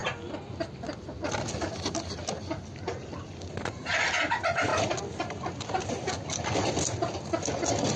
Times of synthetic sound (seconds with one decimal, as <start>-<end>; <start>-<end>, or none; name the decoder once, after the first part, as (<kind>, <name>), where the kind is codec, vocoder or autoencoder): none